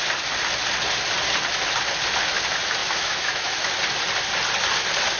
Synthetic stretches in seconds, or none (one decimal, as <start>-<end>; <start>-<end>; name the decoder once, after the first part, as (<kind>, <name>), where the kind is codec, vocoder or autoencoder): 2.8-3.7 (autoencoder, DAC-VAE)